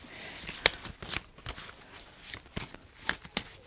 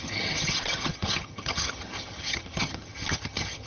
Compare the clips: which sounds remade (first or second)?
second